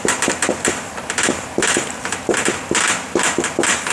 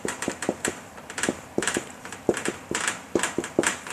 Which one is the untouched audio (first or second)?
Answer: first